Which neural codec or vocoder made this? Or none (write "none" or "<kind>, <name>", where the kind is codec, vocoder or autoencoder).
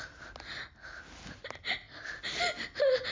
none